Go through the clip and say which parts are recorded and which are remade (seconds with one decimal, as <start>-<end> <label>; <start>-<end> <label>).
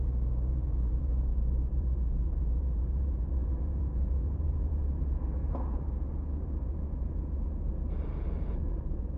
0.0-9.2 remade